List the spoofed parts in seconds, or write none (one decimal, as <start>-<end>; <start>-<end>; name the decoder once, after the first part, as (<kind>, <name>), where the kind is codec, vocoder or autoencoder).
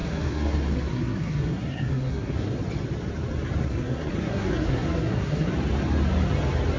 0.0-2.6 (codec, SNAC); 3.6-5.5